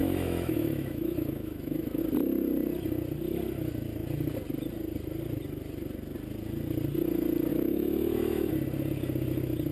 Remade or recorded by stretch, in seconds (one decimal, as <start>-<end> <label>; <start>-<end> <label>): 0.0-2.0 remade; 2.0-7.5 recorded; 7.5-8.5 remade; 8.5-9.7 recorded